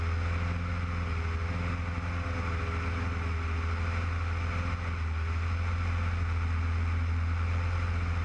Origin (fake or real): real